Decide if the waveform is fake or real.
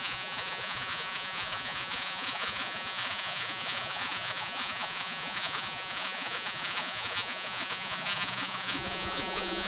fake